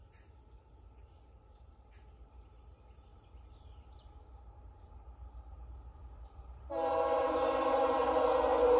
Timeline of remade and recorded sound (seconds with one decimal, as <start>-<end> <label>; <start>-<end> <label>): 0.0-3.1 recorded; 3.1-8.2 remade; 8.2-8.8 recorded